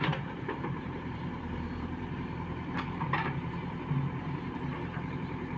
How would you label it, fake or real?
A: fake